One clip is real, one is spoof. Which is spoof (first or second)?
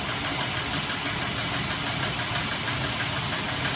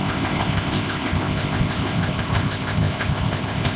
second